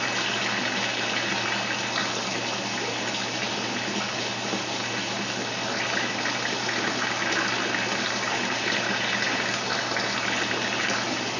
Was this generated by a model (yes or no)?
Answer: no